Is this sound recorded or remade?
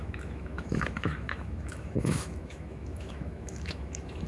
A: remade